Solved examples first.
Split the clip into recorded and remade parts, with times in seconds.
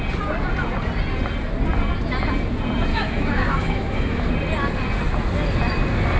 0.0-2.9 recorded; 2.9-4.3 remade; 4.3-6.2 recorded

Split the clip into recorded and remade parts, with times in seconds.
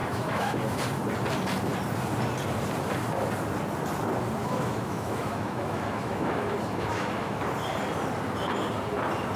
0.0-0.6 remade; 0.6-4.4 recorded; 4.4-7.4 remade; 7.4-9.4 recorded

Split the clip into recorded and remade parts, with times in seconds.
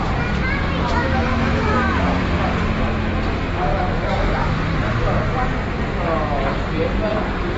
0.0-1.3 recorded; 1.3-2.2 remade; 2.2-3.7 recorded; 3.7-4.7 remade; 4.7-7.6 recorded